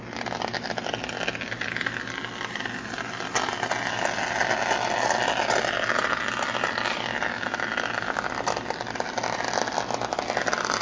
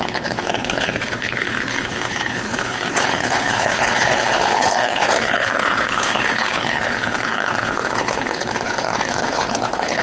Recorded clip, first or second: first